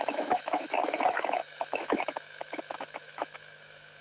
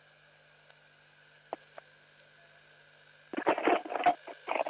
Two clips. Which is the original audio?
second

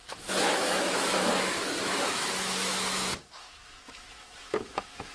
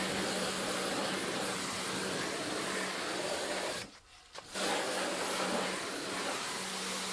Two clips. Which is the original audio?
second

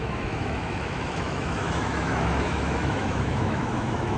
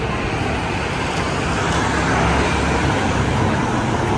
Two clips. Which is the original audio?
second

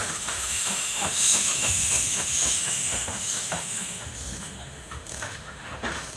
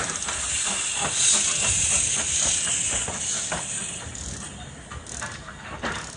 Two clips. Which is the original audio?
second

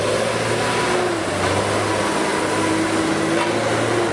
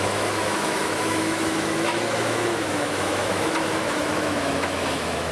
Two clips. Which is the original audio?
first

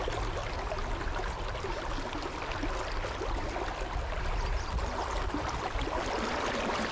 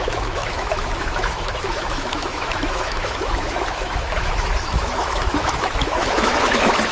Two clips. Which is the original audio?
first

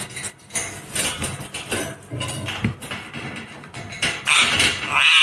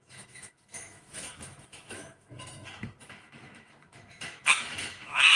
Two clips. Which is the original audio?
first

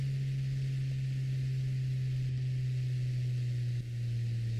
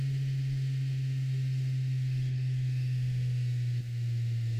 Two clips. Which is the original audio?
first